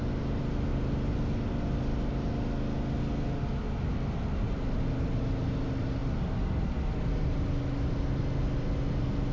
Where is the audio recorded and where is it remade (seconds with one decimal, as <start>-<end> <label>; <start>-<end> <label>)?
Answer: 0.0-9.3 recorded